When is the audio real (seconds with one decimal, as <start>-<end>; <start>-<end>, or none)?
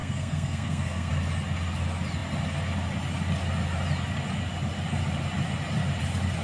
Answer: 1.1-6.4